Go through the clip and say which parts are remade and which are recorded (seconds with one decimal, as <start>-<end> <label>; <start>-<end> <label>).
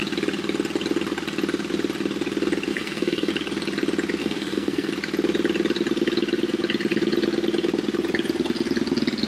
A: 0.0-2.7 recorded; 2.7-3.3 remade; 3.3-4.2 recorded; 4.2-4.9 remade; 4.9-9.3 recorded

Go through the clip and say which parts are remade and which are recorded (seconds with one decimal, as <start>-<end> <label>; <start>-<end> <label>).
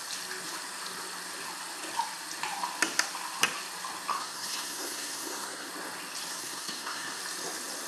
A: 0.0-4.1 recorded; 4.1-5.7 remade; 5.7-6.3 recorded; 6.3-7.2 remade; 7.2-7.9 recorded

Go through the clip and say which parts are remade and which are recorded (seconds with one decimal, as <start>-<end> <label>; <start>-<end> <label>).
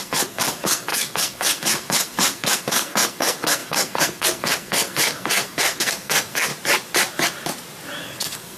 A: 0.0-6.5 remade; 6.5-8.0 recorded; 8.0-8.6 remade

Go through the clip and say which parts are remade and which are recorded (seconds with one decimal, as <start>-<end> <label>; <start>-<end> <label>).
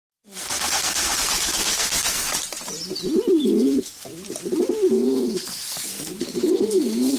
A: 0.0-2.3 remade; 2.3-3.4 recorded; 3.4-4.1 remade; 4.1-4.9 recorded; 4.9-7.2 remade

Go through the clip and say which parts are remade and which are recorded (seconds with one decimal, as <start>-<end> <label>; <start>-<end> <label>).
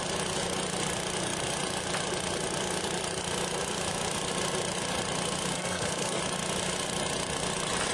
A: 0.0-5.5 recorded; 5.5-6.2 remade; 6.2-7.9 recorded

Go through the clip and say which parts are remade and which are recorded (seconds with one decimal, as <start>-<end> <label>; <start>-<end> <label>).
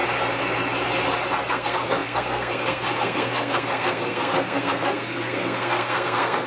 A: 0.0-1.5 recorded; 1.5-6.5 remade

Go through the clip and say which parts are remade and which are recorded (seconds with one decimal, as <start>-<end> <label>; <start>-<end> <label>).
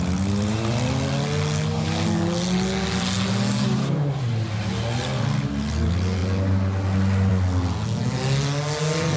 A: 0.0-9.2 recorded